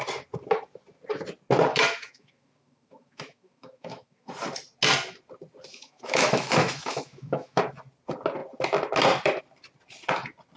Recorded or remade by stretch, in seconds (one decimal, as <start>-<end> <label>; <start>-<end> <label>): 0.0-1.7 recorded; 1.7-4.3 remade; 4.3-5.7 recorded; 5.7-7.6 remade; 7.6-10.6 recorded